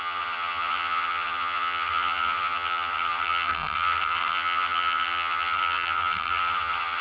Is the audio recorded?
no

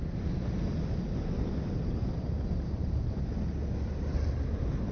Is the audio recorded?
yes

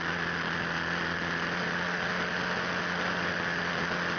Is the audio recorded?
yes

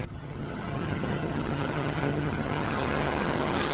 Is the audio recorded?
no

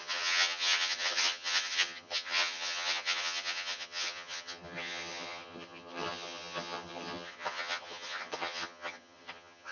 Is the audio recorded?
no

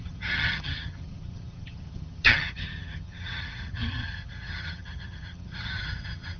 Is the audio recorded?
no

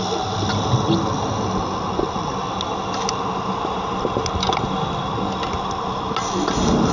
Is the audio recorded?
yes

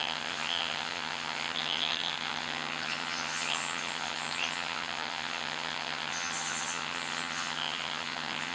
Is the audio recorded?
no